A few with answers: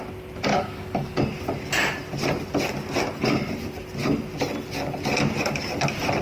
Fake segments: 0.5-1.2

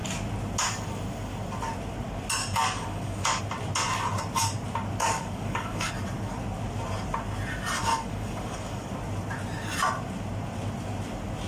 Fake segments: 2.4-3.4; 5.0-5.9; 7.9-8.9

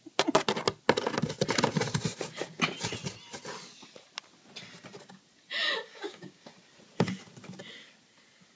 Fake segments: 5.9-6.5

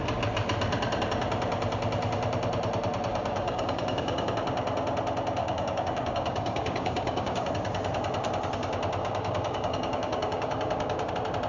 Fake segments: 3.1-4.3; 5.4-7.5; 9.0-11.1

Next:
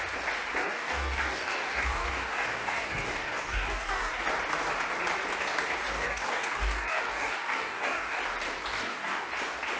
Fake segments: 0.6-4.2; 5.9-8.2; 8.7-9.3